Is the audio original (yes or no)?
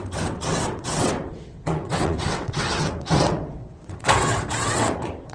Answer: no